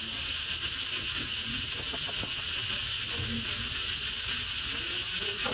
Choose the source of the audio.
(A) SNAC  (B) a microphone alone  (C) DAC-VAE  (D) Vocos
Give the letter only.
B